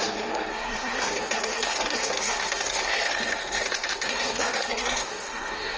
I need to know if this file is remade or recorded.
remade